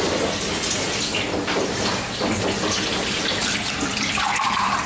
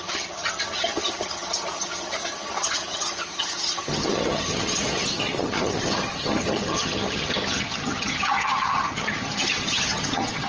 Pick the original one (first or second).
first